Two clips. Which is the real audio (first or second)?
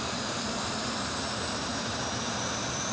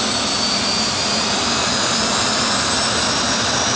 second